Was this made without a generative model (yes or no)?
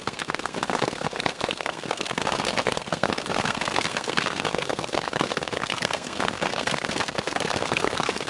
no